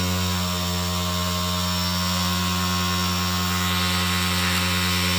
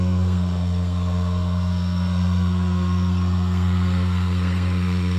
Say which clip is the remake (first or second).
second